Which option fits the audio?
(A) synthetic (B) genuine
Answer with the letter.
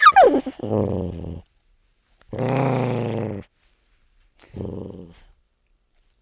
B